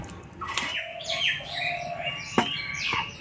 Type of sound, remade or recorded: recorded